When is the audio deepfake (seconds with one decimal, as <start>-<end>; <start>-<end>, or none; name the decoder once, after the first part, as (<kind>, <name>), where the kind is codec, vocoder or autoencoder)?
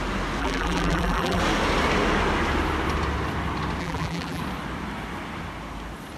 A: 0.4-1.4 (vocoder, BigVGAN v2); 3.8-4.4